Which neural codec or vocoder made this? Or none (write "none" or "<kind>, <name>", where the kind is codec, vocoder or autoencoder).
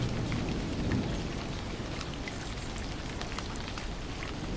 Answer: none